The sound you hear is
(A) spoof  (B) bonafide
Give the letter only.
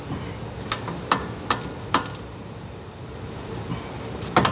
B